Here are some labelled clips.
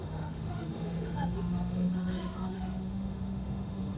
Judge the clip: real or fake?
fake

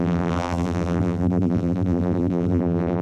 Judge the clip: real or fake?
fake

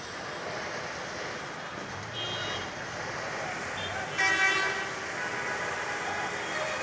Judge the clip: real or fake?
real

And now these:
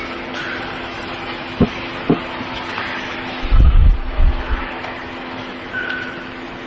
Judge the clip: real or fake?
fake